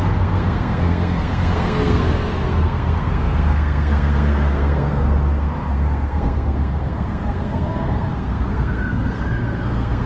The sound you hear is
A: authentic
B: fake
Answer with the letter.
B